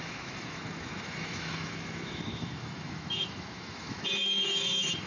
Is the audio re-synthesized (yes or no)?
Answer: yes